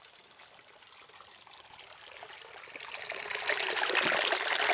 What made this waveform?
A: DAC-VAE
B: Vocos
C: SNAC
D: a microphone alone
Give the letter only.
D